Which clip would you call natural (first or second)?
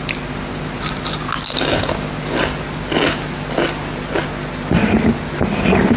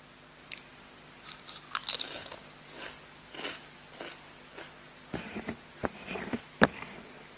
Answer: first